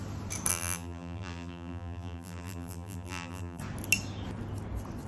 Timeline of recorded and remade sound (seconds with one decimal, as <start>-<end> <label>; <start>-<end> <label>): 0.0-0.5 recorded; 0.5-3.6 remade; 3.6-5.1 recorded